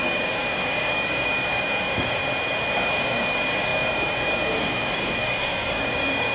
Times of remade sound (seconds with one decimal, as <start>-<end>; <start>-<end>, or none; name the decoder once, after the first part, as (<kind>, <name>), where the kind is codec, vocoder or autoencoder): 0.0-2.2 (codec, DAC); 2.7-6.3